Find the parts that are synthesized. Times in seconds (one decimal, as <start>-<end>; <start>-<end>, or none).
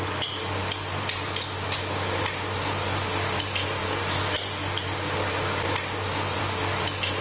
none